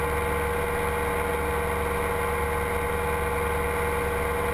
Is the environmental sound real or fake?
real